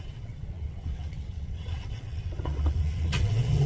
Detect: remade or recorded remade